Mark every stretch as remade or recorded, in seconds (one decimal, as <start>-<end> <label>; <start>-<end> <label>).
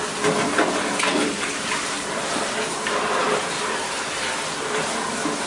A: 0.0-1.1 recorded; 1.1-4.4 remade; 4.4-5.5 recorded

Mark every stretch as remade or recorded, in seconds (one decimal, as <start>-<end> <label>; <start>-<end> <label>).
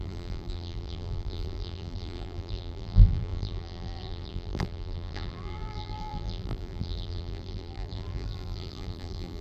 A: 0.0-9.4 remade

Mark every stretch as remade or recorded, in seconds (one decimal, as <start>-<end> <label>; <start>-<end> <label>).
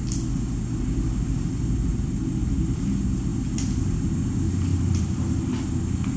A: 0.0-1.9 recorded; 1.9-2.9 remade; 2.9-4.7 recorded; 4.7-5.6 remade; 5.6-6.2 recorded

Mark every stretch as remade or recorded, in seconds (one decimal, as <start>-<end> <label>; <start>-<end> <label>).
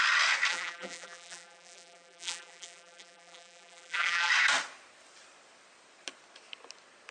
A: 0.0-0.5 recorded; 0.5-4.3 remade; 4.3-7.1 recorded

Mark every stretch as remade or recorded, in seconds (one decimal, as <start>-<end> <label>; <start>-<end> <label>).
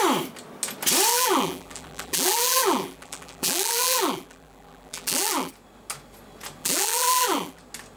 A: 0.0-1.1 recorded; 1.1-5.5 remade; 5.5-6.6 recorded; 6.6-7.6 remade; 7.6-8.0 recorded